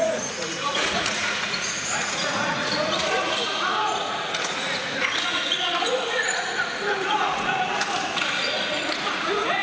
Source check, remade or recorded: remade